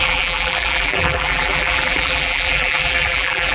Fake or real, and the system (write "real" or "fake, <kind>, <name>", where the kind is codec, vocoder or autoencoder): fake, vocoder, BigVGAN v2